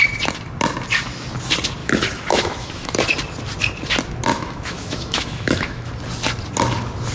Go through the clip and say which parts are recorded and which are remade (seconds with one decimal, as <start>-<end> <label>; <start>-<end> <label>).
0.0-1.8 recorded; 1.8-2.9 remade; 2.9-4.3 recorded; 4.3-5.9 remade; 5.9-7.1 recorded